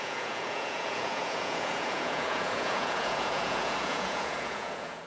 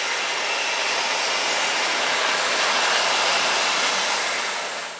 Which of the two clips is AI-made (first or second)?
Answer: first